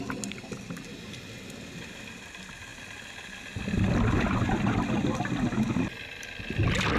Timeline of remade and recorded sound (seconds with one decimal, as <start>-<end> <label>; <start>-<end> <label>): 0.0-7.0 recorded